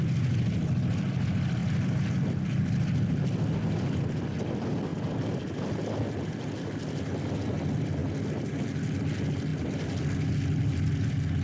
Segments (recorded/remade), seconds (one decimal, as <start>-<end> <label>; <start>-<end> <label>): 0.0-1.6 recorded; 1.6-2.3 remade; 2.3-8.0 recorded; 8.0-8.5 remade; 8.5-9.5 recorded; 9.5-11.0 remade; 11.0-11.4 recorded